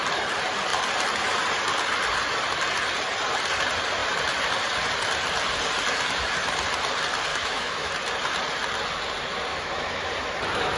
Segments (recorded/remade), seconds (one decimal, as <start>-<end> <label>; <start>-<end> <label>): 0.0-7.3 recorded; 7.3-7.9 remade; 7.9-9.5 recorded; 9.5-10.1 remade; 10.1-10.8 recorded